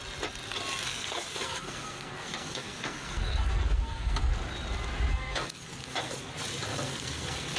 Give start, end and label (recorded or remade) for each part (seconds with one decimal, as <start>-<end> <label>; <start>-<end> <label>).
0.0-0.9 recorded; 0.9-4.3 remade; 4.3-5.1 recorded; 5.1-6.3 remade; 6.3-6.7 recorded; 6.7-7.6 remade